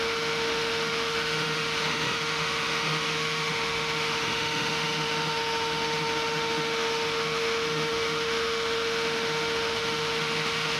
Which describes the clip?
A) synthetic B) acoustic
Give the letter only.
A